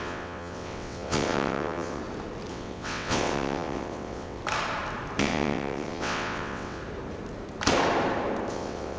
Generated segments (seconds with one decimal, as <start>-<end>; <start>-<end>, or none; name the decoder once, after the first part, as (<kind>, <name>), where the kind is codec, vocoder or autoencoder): 0.0-2.0 (vocoder, WaveNeXt); 2.5-4.4; 5.2-6.8; 8.5-9.0